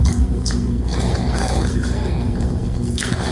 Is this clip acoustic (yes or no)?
no